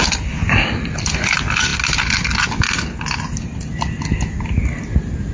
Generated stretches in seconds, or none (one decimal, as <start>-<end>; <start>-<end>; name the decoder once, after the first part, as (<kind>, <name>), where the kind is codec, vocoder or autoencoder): none